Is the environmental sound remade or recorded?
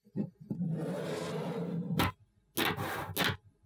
recorded